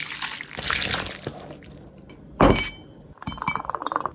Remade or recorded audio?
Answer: recorded